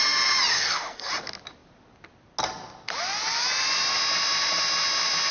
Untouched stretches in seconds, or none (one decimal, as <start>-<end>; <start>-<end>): 0.0-0.5; 1.1-5.3